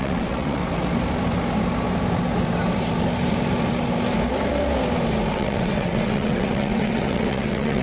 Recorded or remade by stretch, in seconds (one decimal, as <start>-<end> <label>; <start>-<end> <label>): 0.0-0.6 remade; 0.6-5.3 recorded; 5.3-7.8 remade